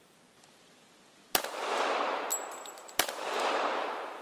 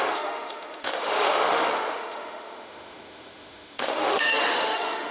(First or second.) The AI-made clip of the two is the second